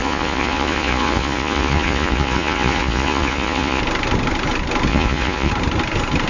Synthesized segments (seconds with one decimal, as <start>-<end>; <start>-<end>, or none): 0.0-3.8; 4.9-5.5